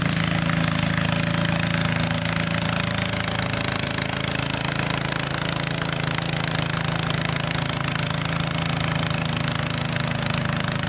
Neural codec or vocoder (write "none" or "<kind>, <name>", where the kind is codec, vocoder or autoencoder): none